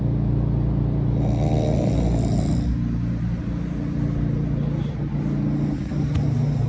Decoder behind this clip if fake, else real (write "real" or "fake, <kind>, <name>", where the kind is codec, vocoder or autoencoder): real